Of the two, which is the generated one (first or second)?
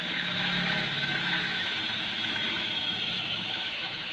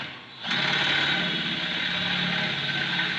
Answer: first